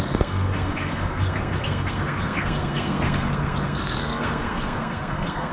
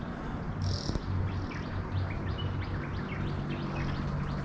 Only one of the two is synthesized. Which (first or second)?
first